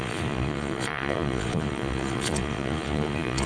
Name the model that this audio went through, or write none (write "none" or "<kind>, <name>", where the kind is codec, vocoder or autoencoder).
vocoder, Vocos